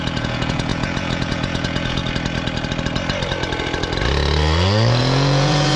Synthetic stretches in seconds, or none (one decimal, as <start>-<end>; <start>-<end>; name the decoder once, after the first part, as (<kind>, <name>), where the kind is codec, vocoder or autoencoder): 0.0-2.0 (vocoder, Vocos); 5.0-5.8